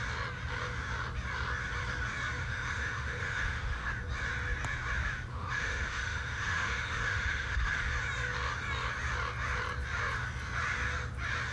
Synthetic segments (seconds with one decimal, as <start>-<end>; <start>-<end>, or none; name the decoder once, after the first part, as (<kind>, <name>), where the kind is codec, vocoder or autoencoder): 2.4-3.9 (autoencoder, DAC-VAE); 5.3-7.9